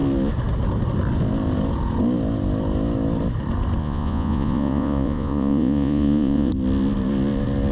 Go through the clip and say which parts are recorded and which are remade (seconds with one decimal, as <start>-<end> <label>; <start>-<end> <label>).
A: 0.0-3.8 recorded; 3.8-6.5 remade; 6.5-7.7 recorded